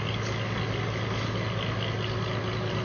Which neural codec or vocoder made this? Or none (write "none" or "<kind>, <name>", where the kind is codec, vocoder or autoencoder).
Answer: none